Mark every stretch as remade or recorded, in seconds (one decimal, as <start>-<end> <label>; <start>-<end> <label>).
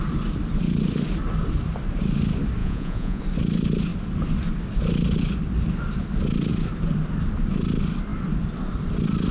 0.0-2.6 recorded; 2.6-3.2 remade; 3.2-9.3 recorded